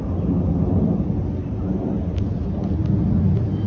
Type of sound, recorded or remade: recorded